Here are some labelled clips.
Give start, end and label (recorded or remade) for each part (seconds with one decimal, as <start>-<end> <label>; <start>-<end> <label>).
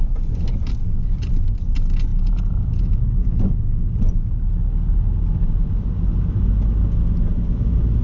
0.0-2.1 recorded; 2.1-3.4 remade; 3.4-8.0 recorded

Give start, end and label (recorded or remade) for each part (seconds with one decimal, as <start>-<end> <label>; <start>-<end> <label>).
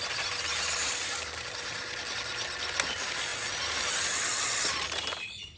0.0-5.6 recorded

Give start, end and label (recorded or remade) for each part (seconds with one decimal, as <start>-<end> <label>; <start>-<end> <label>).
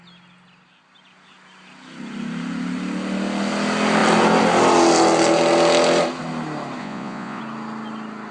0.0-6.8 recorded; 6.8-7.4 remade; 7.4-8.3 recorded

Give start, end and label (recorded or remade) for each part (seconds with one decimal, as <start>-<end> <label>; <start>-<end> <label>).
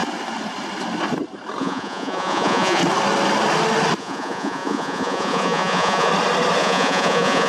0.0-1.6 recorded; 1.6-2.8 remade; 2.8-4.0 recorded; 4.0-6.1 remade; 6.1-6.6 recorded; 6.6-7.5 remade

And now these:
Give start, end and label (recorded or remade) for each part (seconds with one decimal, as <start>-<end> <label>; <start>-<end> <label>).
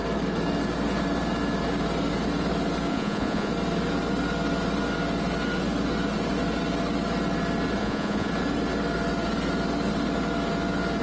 0.0-2.9 recorded; 2.9-3.5 remade; 3.5-7.8 recorded; 7.8-8.3 remade; 8.3-11.0 recorded